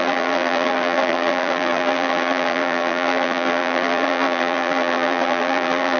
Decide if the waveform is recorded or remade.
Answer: remade